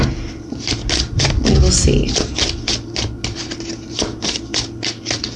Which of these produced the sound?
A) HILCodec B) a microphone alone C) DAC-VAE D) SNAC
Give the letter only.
B